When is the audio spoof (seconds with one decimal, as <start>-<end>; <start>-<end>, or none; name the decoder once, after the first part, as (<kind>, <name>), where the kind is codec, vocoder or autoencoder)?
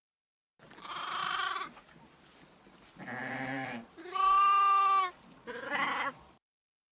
1.2-2.2 (vocoder, BigVGAN v2); 3.2-4.0